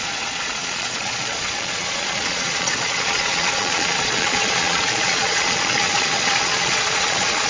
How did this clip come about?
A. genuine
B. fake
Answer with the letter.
B